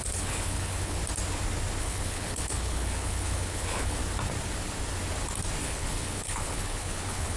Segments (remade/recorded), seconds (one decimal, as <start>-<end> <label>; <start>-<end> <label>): 0.0-1.0 remade; 1.0-1.8 recorded; 1.8-4.0 remade; 4.0-5.6 recorded; 5.6-7.4 remade